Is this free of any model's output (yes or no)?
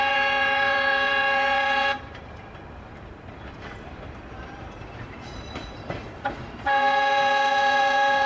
no